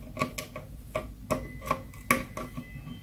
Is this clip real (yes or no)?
yes